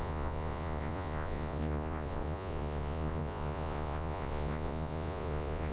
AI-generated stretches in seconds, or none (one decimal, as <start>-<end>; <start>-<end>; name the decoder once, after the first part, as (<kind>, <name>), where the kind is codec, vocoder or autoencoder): 0.0-5.7 (vocoder, Vocos)